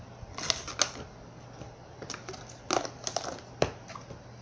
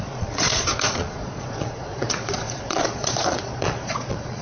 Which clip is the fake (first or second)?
second